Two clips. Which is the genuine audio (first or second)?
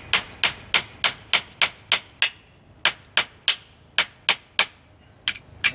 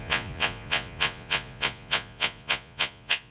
first